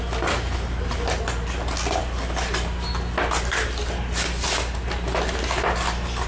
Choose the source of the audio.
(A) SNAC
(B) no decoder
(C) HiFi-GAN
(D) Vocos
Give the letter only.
B